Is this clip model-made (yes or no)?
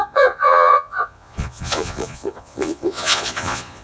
yes